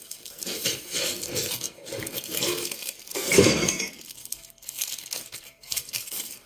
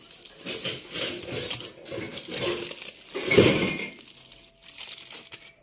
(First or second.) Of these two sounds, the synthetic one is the first